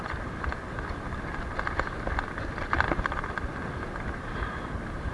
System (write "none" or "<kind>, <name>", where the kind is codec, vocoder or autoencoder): none